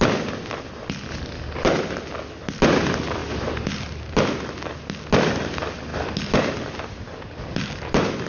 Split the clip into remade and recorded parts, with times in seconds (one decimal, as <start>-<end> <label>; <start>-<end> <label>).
0.0-8.3 recorded